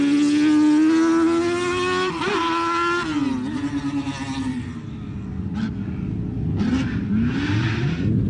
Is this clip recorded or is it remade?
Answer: recorded